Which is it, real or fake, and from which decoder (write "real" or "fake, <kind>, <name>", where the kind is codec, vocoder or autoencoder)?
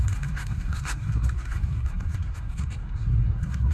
fake, codec, SNAC